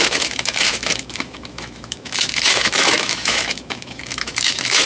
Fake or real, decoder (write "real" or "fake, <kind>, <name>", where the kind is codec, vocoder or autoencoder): fake, autoencoder, DAC-VAE